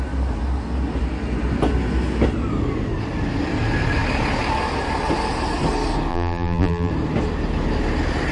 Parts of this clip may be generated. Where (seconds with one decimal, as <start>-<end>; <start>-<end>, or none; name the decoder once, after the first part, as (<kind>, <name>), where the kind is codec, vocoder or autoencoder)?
6.1-6.9 (vocoder, BigVGAN v2)